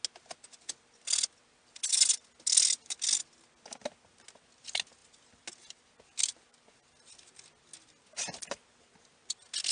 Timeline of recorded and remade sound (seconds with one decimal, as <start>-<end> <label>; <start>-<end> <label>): 0.0-9.7 recorded